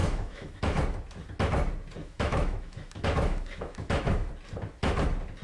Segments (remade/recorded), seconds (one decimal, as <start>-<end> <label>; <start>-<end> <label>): 0.0-0.8 remade; 0.8-2.0 recorded; 2.0-4.3 remade; 4.3-5.4 recorded